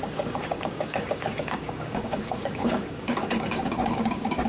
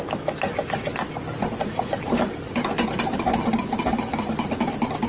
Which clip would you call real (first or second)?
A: second